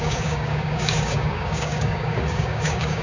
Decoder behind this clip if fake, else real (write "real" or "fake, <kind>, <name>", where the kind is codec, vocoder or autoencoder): fake, codec, DAC